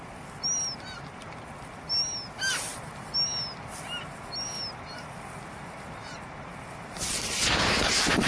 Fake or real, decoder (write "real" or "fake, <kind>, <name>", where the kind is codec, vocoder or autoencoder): real